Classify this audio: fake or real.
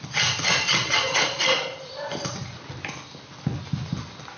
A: real